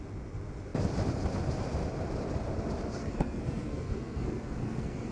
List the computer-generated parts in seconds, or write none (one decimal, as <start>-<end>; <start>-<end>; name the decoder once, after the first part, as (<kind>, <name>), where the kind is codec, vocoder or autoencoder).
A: 3.0-5.1 (codec, SNAC)